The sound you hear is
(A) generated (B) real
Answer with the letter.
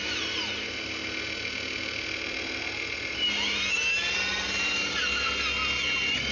B